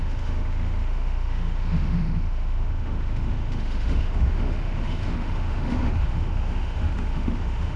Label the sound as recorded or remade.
remade